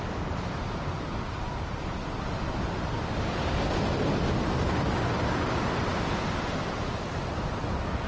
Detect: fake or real real